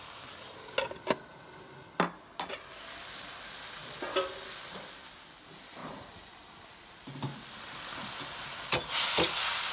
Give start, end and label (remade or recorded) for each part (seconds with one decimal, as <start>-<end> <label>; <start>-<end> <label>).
0.0-9.7 recorded